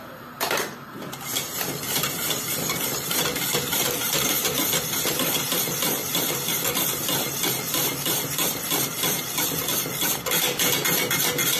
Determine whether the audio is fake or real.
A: real